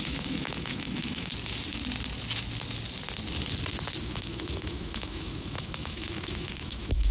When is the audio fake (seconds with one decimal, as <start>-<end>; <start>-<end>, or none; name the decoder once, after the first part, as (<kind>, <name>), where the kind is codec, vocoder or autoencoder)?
0.0-1.3 (autoencoder, DAC-VAE); 4.0-7.1